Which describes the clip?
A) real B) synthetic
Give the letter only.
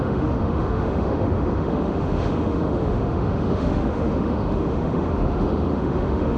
B